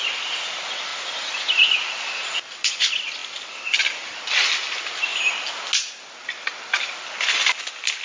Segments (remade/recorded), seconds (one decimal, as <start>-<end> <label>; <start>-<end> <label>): 0.0-8.0 recorded